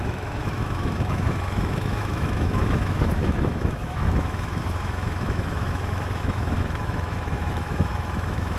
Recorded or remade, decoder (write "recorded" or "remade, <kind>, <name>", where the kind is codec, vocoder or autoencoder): remade, autoencoder, DAC-VAE